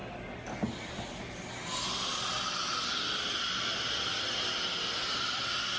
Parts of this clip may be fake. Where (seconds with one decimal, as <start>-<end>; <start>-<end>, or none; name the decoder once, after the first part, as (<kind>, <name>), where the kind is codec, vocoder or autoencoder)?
none

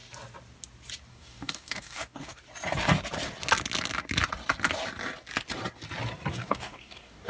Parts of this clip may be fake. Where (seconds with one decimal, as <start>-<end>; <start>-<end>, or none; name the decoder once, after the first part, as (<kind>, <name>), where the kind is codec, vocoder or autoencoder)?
1.1-2.4 (codec, DAC); 6.3-7.3

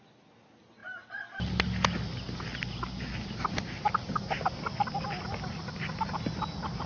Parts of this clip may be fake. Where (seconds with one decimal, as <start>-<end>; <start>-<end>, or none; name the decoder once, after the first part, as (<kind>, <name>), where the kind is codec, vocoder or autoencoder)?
none